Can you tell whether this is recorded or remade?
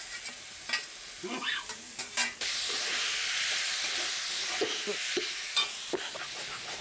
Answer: recorded